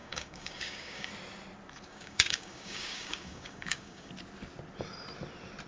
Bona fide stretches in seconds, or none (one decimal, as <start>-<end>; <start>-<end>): 1.1-1.9; 4.1-5.7